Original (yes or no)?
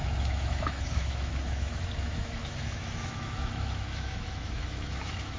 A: no